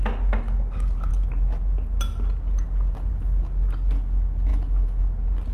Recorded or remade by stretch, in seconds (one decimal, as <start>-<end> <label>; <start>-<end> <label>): 0.0-4.5 recorded; 4.5-5.0 remade; 5.0-5.5 recorded